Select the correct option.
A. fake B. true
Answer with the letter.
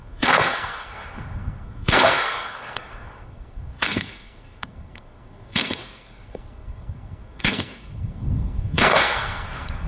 A